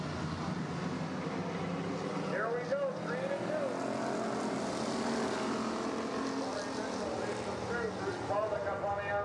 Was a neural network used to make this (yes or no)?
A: no